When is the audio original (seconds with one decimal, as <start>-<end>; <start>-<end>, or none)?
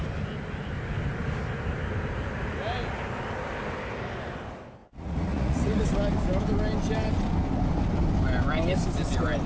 0.0-4.8; 5.8-9.5